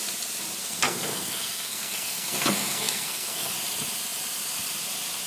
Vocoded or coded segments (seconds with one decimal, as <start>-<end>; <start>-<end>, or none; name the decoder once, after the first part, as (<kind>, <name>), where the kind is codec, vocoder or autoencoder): 0.6-3.5 (codec, SNAC)